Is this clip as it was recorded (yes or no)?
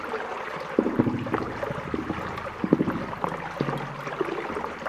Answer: yes